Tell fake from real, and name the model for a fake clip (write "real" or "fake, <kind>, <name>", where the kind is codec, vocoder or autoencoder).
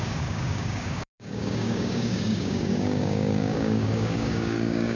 fake, codec, DAC